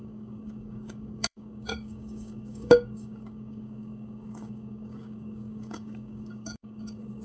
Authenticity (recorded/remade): remade